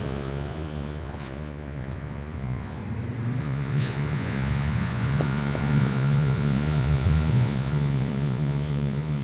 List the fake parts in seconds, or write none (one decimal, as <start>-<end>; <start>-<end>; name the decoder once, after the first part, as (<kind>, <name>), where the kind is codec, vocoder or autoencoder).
0.0-2.8 (vocoder, Vocos); 3.4-9.2